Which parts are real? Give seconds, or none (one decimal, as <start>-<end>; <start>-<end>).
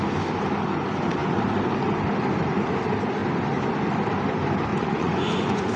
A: 0.0-4.7